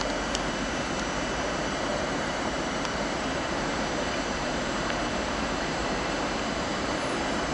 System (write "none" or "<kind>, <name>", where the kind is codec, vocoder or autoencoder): vocoder, BigVGAN v2